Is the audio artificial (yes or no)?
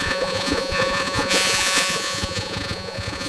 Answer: yes